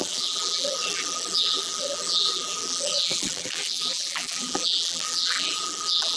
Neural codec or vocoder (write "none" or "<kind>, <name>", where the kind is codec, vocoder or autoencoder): vocoder, BigVGAN v2